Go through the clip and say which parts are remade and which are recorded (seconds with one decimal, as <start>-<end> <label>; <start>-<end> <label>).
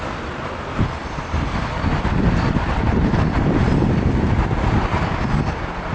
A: 0.0-1.0 recorded; 1.0-4.3 remade; 4.3-5.9 recorded